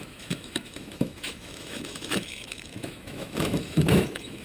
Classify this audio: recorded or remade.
remade